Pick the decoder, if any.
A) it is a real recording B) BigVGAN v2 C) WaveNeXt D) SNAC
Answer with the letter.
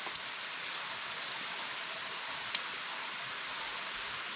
A